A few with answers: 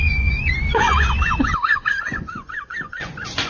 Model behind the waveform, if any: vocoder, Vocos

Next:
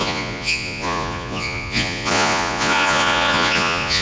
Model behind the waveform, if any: vocoder, Vocos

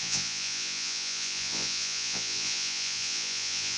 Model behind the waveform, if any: vocoder, Vocos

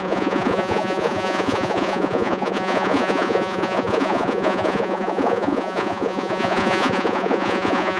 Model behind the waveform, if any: vocoder, Vocos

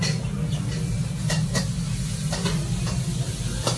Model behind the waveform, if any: none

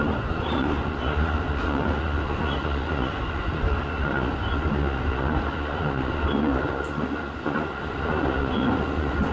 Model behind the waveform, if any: vocoder, Vocos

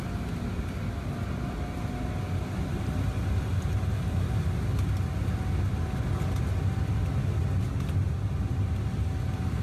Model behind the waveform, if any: none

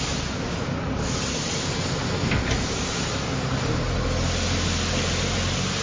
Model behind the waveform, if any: none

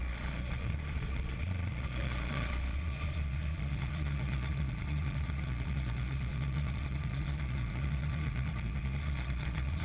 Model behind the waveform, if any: vocoder, Vocos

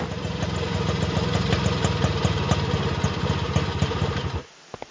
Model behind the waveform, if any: none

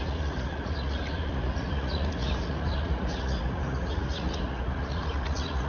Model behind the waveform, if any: vocoder, Vocos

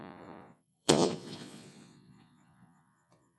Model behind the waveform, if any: vocoder, Vocos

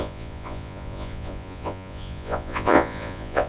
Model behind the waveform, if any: vocoder, Vocos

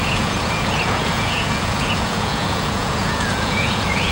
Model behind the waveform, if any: vocoder, Vocos